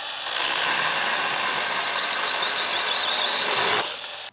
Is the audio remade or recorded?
recorded